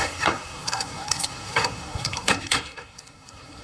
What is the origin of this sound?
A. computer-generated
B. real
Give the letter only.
A